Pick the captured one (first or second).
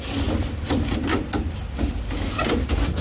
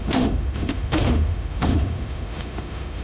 first